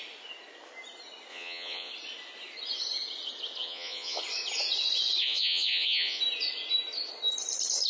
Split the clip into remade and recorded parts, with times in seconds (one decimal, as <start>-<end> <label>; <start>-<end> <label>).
0.0-1.3 recorded; 1.3-1.9 remade; 1.9-3.6 recorded; 3.6-4.2 remade; 4.2-5.2 recorded; 5.2-6.2 remade; 6.2-7.9 recorded